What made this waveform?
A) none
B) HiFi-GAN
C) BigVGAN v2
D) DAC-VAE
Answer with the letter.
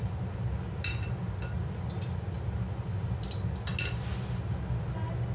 A